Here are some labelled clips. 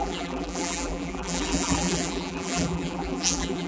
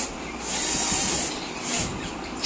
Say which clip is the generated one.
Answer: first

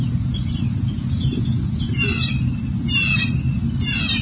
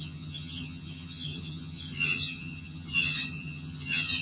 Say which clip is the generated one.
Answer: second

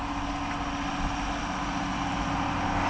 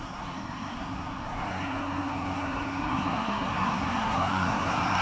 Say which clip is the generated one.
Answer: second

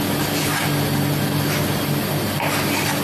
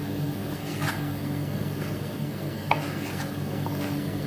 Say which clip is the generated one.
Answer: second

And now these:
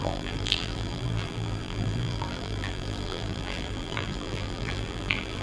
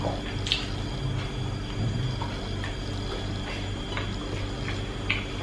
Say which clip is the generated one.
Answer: first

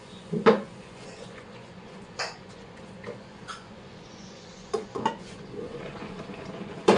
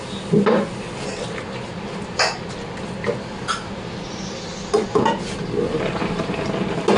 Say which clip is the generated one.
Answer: first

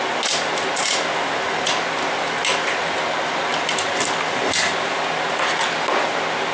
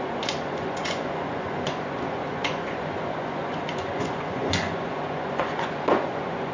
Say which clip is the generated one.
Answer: second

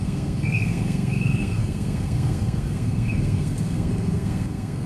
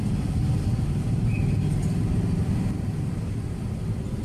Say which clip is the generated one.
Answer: first